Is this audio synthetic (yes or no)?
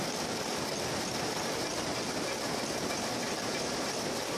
no